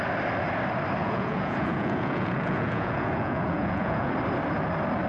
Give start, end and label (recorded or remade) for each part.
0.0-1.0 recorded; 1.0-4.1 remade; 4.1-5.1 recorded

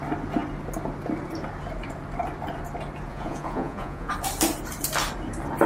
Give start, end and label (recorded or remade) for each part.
0.0-3.1 recorded; 3.1-4.1 remade; 4.1-5.7 recorded